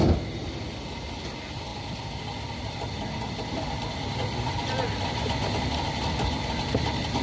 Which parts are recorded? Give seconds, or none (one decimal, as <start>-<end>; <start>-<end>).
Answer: 0.0-7.2